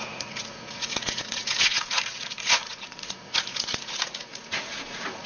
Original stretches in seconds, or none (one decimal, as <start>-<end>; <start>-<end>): none